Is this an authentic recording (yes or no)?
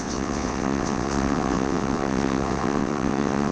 no